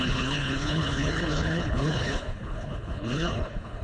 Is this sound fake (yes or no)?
yes